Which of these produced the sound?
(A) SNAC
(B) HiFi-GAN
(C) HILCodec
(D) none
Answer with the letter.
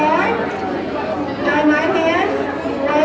D